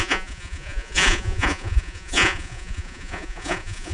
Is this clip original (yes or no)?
no